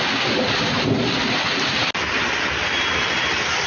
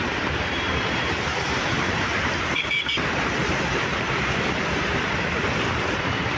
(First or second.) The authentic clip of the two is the first